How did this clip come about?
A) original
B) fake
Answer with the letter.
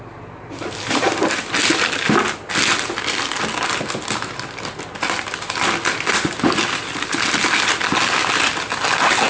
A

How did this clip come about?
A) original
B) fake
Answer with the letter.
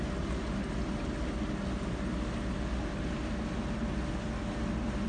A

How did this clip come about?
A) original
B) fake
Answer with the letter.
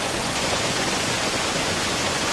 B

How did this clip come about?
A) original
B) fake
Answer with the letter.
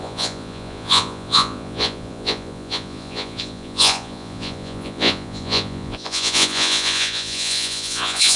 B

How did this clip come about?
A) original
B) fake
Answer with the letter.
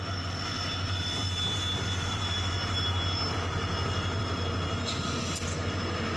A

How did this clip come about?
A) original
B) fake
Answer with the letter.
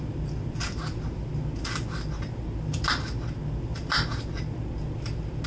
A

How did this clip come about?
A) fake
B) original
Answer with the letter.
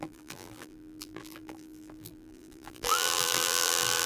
A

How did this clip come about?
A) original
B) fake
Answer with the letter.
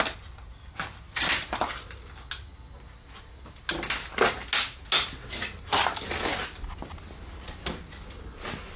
A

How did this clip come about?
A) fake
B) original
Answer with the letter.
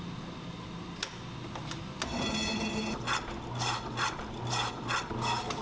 B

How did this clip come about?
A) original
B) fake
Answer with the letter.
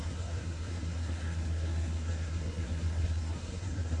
B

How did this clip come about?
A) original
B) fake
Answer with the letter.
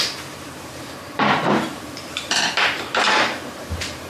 B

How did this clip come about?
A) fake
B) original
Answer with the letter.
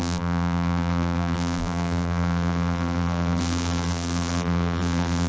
A